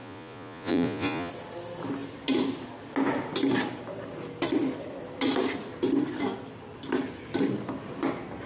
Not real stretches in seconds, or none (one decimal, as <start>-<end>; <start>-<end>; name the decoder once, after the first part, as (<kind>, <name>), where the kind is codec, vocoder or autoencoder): 0.0-1.3 (vocoder, Vocos)